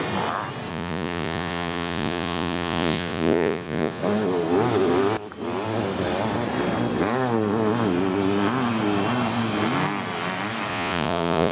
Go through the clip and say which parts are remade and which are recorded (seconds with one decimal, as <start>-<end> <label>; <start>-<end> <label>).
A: 0.0-0.7 recorded; 0.7-4.0 remade; 4.0-10.7 recorded; 10.7-11.5 remade